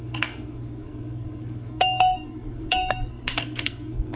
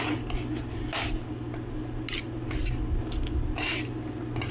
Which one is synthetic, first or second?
first